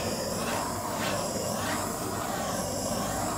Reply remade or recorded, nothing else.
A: remade